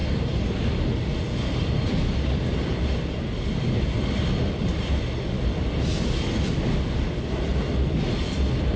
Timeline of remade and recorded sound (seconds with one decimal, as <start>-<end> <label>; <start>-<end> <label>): 0.0-8.8 recorded